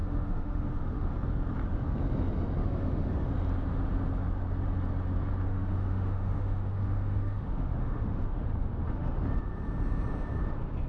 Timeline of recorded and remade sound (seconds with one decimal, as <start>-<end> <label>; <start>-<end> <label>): 0.0-1.1 remade; 1.1-2.6 recorded; 2.6-3.3 remade; 3.3-5.5 recorded; 5.5-9.1 remade; 9.1-10.9 recorded